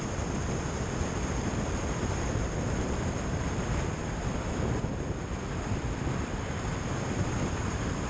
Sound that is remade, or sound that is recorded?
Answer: remade